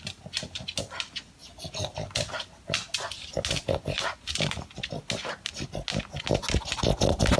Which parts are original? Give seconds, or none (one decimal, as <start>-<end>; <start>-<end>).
0.0-7.4

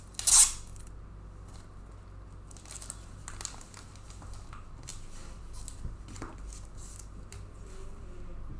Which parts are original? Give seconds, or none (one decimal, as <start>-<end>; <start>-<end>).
0.0-8.6

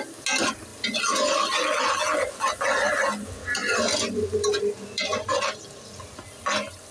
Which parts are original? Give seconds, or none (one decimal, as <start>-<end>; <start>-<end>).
0.0-3.6; 5.4-6.9